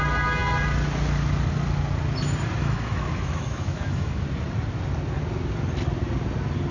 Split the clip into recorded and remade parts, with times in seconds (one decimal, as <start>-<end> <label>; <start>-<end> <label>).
0.0-2.6 recorded; 2.6-4.2 remade; 4.2-6.7 recorded